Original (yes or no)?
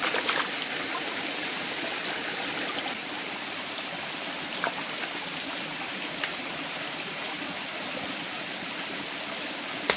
yes